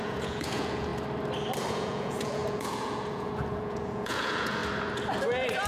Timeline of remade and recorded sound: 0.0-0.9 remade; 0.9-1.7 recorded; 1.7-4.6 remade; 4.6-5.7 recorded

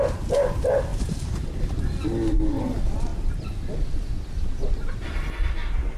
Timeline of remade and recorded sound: 0.0-6.0 recorded

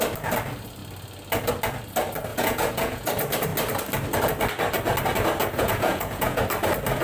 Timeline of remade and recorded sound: 0.0-2.3 recorded; 2.3-3.1 remade; 3.1-5.4 recorded; 5.4-6.4 remade; 6.4-7.0 recorded